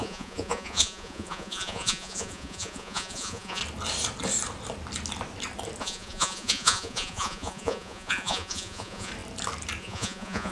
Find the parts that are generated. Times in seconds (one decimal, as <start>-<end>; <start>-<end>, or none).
0.0-3.6; 5.8-9.1; 9.8-10.5